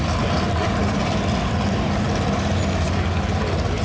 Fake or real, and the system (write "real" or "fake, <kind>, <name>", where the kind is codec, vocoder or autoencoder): real